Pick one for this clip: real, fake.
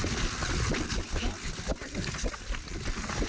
real